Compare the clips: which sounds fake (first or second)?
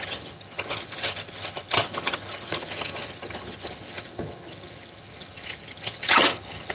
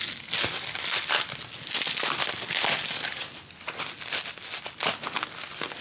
first